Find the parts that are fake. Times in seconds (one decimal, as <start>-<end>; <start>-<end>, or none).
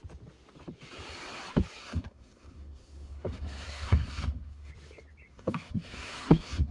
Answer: 1.8-4.7; 5.3-6.7